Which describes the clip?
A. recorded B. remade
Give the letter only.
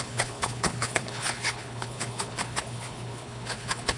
B